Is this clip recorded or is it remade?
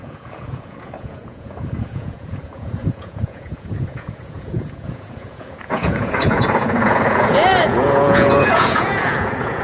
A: remade